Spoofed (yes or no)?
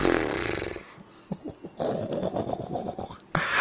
no